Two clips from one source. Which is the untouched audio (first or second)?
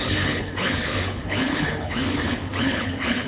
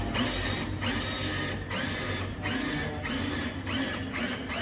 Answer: second